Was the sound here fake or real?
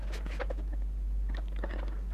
real